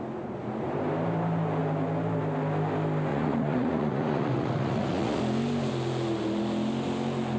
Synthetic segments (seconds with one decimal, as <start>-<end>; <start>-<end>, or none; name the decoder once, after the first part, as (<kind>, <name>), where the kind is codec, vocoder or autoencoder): 3.1-5.2 (vocoder, Vocos)